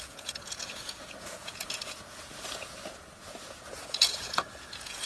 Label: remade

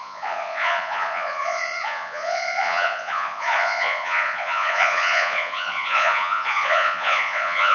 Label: remade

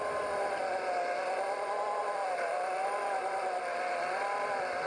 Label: recorded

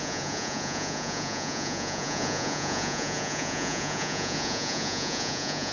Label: remade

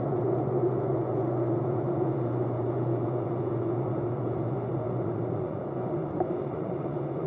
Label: remade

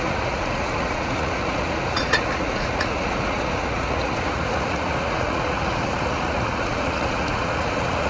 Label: remade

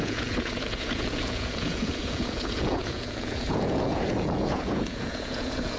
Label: remade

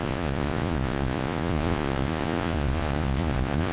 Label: remade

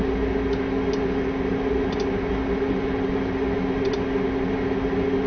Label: recorded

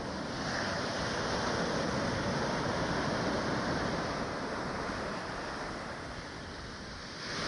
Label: recorded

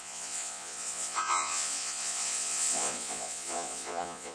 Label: remade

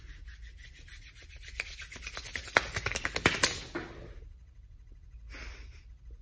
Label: recorded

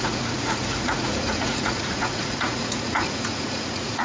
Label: remade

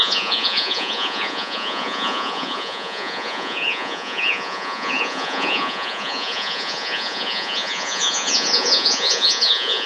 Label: remade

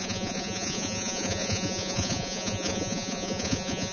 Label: remade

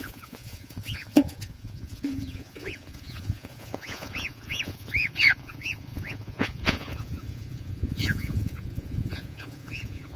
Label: remade